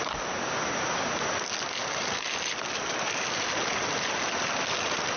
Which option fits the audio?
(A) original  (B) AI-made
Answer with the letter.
A